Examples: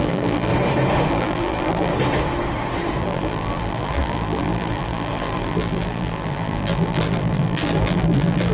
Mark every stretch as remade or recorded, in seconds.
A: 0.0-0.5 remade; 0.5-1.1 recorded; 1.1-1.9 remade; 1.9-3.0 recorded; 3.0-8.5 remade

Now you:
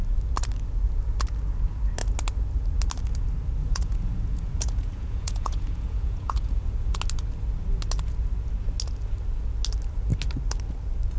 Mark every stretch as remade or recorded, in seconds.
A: 0.0-3.6 recorded; 3.6-7.0 remade; 7.0-11.2 recorded

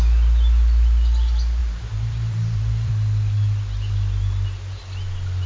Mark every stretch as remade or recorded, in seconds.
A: 0.0-1.6 recorded; 1.6-2.9 remade; 2.9-5.5 recorded

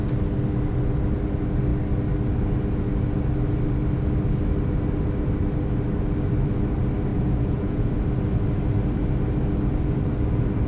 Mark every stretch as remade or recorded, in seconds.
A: 0.0-7.1 recorded; 7.1-7.9 remade; 7.9-10.7 recorded

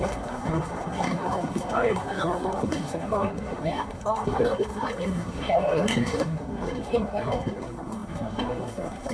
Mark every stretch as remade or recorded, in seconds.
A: 0.0-9.1 remade

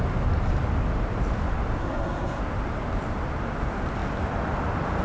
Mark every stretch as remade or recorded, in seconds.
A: 0.0-1.8 recorded; 1.8-2.4 remade; 2.4-5.0 recorded